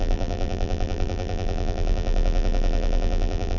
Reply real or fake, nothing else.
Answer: fake